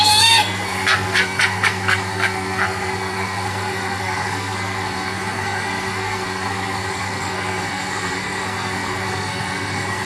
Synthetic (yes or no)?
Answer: yes